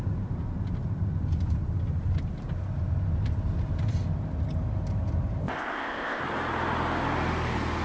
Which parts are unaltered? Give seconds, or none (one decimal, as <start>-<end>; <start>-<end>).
0.0-5.4; 6.2-7.8